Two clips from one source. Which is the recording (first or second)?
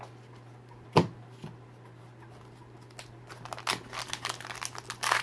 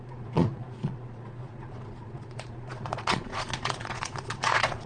first